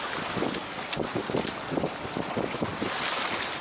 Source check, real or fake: real